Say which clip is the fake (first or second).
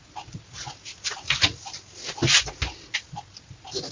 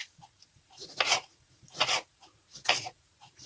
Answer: second